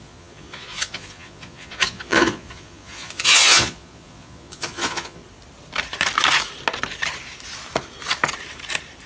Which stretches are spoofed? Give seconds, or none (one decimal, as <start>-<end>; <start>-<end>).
0.0-5.2